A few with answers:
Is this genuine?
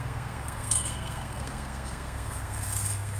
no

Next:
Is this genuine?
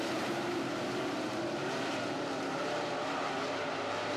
no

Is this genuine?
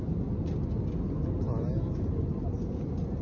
yes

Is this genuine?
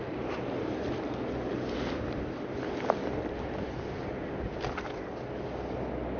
yes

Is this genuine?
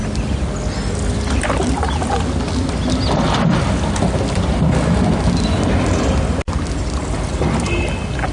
yes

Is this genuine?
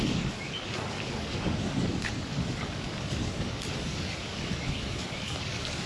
no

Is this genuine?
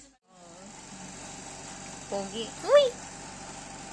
yes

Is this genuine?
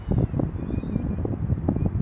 yes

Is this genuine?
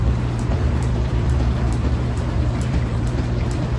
no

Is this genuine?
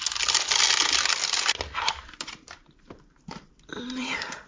yes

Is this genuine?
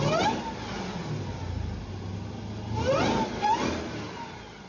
yes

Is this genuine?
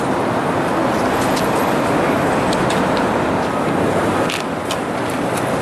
yes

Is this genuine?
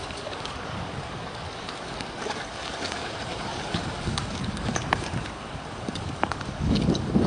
no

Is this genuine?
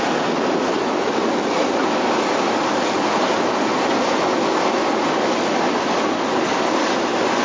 yes